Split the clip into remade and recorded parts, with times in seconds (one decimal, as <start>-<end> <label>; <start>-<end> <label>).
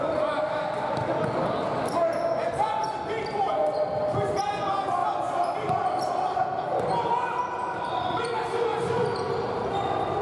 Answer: 0.0-10.2 recorded